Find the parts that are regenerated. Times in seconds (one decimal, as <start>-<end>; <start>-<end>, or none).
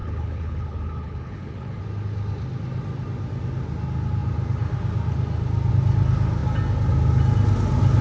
0.0-1.8